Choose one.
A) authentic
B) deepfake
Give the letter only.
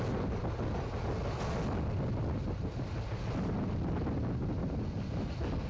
A